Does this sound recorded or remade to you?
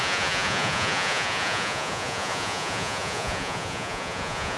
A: remade